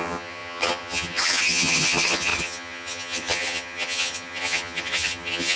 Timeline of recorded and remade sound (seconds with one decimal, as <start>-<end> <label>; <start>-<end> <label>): 0.0-5.6 remade